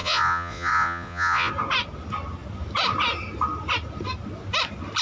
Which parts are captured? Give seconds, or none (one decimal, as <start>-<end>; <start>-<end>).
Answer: 1.5-5.0